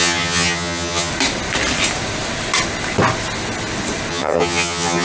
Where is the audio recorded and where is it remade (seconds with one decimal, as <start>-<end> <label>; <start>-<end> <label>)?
0.0-1.1 remade; 1.1-4.1 recorded; 4.1-5.0 remade